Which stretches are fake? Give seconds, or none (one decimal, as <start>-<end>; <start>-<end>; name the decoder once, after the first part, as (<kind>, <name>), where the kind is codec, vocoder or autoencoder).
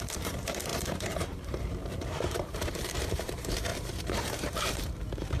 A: 0.0-5.4 (vocoder, BigVGAN v2)